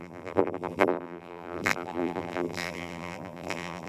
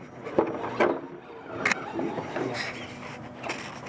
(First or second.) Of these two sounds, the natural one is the second